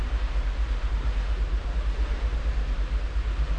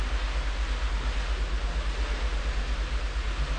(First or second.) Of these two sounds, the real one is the second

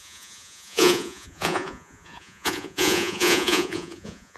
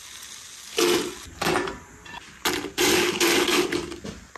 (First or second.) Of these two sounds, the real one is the second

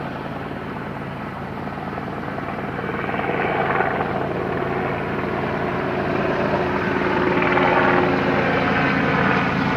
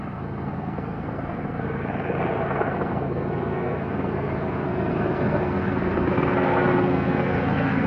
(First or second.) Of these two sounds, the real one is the first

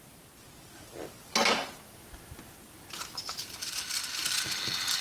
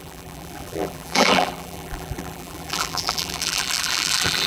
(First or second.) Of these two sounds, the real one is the first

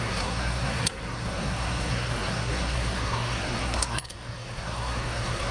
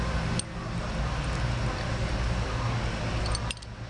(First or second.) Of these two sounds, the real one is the second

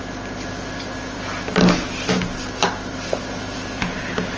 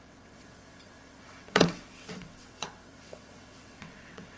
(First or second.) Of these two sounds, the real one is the first